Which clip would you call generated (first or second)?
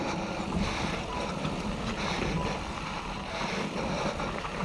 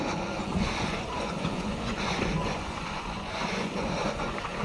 second